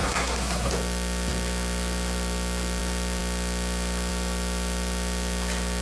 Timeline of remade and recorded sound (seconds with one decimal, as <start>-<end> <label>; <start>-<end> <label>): 0.0-0.7 remade; 0.7-5.8 recorded